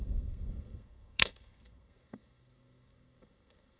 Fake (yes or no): yes